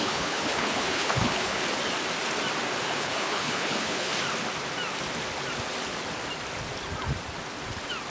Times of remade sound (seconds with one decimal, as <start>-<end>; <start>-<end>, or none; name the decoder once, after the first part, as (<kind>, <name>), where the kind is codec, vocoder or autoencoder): 0.0-1.6 (codec, HILCodec); 2.8-4.1